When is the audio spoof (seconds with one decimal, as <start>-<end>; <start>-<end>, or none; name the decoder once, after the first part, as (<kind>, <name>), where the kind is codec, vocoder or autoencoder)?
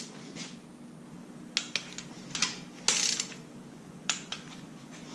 0.0-0.6 (vocoder, Vocos); 3.7-5.1